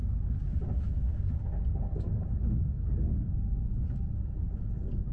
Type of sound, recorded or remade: recorded